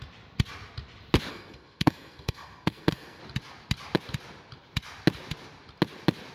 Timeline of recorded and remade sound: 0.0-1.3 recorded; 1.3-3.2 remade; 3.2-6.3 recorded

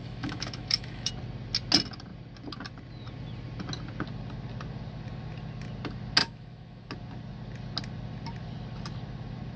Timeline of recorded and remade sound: 0.0-1.1 remade; 1.1-6.2 recorded; 6.2-6.9 remade; 6.9-9.6 recorded

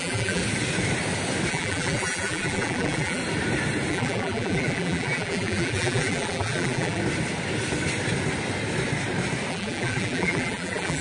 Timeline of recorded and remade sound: 0.0-0.4 remade; 0.4-1.5 recorded; 1.5-3.2 remade; 3.2-3.9 recorded; 3.9-7.0 remade; 7.0-9.5 recorded; 9.5-11.0 remade

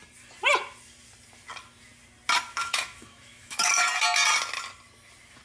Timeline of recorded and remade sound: 0.0-2.6 recorded; 2.6-3.7 remade; 3.7-5.4 recorded

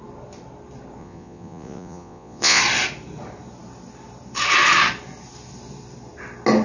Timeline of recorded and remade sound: 0.0-1.0 recorded; 1.0-2.6 remade; 2.6-6.6 recorded